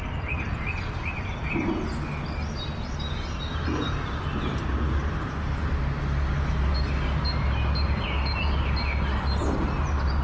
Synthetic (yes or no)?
no